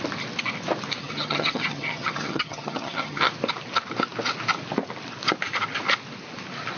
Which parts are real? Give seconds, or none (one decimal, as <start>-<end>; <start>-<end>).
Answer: 0.0-1.0; 3.3-6.8